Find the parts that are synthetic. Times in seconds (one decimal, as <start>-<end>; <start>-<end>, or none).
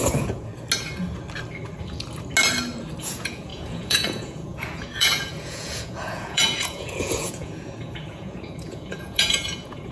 0.0-0.5; 3.0-9.9